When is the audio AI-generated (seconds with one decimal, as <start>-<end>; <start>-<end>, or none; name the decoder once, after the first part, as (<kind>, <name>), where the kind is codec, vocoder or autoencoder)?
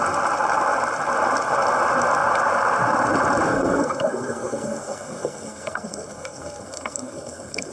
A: 3.5-7.7 (codec, SNAC)